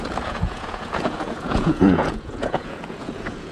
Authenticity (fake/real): fake